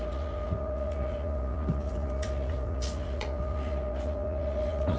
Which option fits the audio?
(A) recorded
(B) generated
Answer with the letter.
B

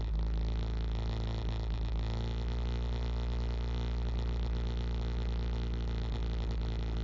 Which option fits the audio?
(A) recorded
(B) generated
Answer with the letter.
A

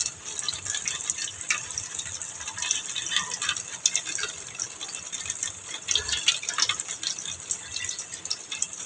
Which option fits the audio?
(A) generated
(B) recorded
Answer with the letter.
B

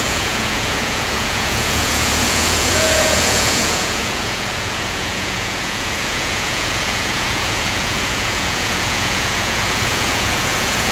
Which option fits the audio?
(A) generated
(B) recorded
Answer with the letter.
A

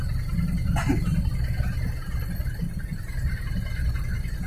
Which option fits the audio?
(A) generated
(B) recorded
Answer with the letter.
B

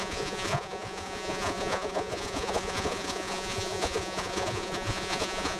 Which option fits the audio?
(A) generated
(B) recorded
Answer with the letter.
A